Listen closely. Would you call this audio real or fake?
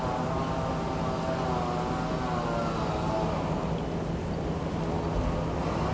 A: real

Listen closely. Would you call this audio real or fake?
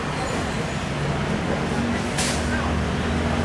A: real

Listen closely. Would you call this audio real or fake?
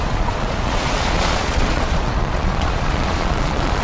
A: fake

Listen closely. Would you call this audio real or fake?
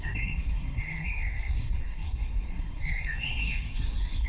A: fake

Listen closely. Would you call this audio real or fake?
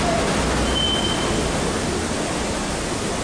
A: real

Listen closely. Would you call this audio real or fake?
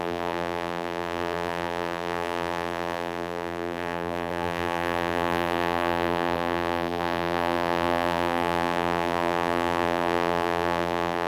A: fake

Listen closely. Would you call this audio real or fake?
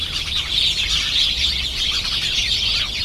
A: fake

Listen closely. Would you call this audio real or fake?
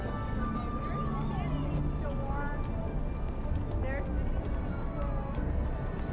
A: real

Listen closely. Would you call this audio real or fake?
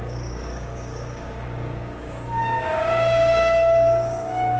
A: fake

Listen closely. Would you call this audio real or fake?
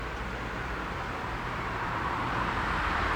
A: fake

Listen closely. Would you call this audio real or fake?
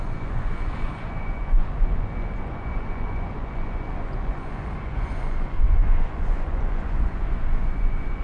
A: fake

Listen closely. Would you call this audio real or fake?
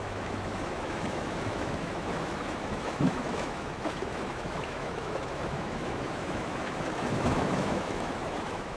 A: fake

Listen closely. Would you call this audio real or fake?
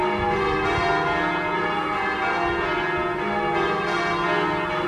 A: real